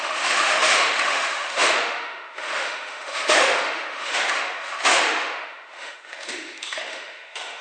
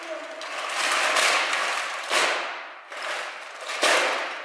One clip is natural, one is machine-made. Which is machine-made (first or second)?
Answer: first